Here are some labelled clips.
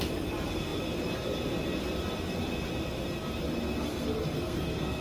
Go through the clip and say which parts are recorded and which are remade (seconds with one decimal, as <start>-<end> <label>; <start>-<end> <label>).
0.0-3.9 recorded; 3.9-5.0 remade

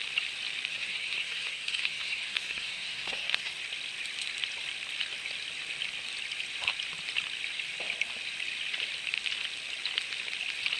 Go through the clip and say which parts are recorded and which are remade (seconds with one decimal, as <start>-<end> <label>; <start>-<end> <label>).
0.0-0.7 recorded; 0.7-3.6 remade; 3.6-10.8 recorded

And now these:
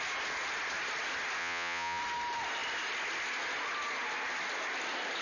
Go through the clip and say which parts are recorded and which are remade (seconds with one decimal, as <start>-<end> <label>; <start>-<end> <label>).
0.0-1.4 recorded; 1.4-2.0 remade; 2.0-5.2 recorded

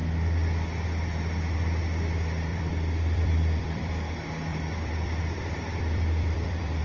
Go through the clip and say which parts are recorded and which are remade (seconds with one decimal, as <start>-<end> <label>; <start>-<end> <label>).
0.0-2.5 recorded; 2.5-3.9 remade; 3.9-4.5 recorded; 4.5-6.8 remade

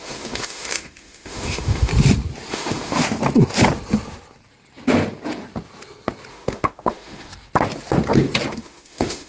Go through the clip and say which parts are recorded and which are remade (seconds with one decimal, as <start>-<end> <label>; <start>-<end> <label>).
0.0-1.9 remade; 1.9-2.5 recorded; 2.5-3.0 remade; 3.0-6.3 recorded; 6.3-7.3 remade; 7.3-8.5 recorded; 8.5-9.3 remade

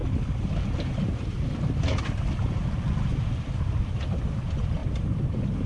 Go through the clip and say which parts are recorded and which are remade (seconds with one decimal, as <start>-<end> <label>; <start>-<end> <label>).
0.0-3.1 recorded; 3.1-3.8 remade; 3.8-4.8 recorded; 4.8-5.7 remade

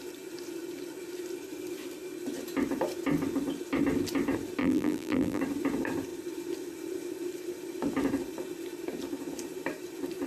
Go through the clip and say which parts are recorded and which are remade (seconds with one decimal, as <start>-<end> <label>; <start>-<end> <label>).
0.0-4.6 recorded; 4.6-5.4 remade; 5.4-10.3 recorded